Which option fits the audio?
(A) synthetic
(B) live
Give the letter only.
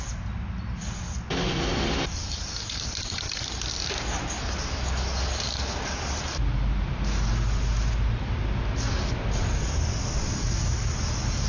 B